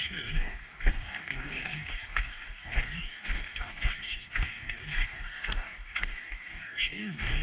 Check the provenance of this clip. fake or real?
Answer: fake